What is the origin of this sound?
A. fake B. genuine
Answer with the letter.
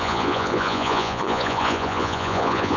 A